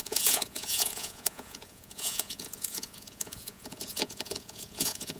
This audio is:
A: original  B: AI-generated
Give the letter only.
B